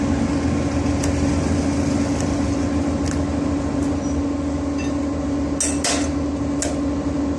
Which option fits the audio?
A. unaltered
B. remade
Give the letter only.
A